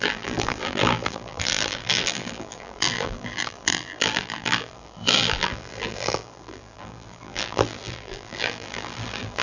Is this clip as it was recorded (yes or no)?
no